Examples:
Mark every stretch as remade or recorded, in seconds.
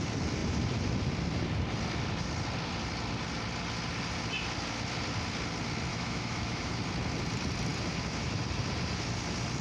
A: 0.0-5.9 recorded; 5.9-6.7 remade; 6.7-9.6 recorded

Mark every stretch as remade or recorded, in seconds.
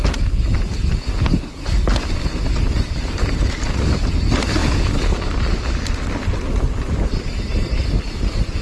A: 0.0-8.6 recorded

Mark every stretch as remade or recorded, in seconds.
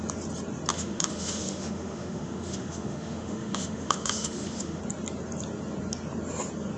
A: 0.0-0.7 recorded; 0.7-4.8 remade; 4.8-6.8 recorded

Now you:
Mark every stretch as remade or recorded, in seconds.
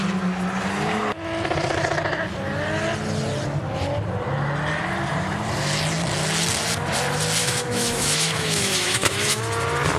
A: 0.0-7.4 recorded; 7.4-9.4 remade; 9.4-10.0 recorded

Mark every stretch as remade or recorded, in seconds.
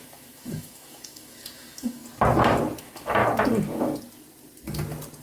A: 0.0-2.0 remade; 2.0-2.8 recorded; 2.8-3.2 remade; 3.2-5.2 recorded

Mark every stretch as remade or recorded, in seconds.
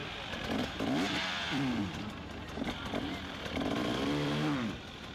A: 0.0-5.1 recorded